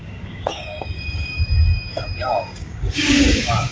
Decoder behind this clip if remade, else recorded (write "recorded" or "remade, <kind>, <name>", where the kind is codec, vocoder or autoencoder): remade, codec, DAC